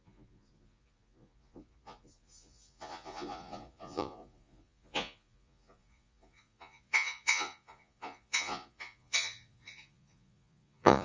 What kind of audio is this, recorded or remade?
remade